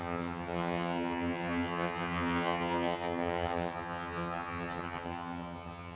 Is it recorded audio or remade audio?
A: remade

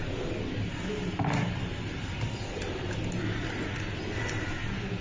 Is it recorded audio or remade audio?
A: recorded